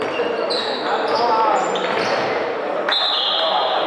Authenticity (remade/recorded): remade